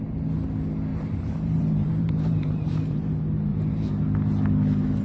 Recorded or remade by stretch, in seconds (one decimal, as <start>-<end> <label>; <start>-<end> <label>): 0.0-0.9 recorded; 0.9-3.1 remade; 3.1-3.5 recorded; 3.5-4.0 remade; 4.0-5.0 recorded